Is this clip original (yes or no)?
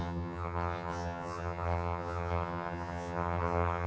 no